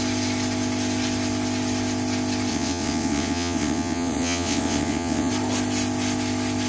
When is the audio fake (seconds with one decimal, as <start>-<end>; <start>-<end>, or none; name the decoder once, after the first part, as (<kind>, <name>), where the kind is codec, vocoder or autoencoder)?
2.5-5.3 (vocoder, WaveNeXt)

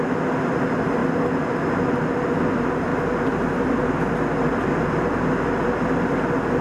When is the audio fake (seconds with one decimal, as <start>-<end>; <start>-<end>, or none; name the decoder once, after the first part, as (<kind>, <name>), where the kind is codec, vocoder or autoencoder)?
1.0-1.6 (vocoder, BigVGAN v2); 2.9-5.4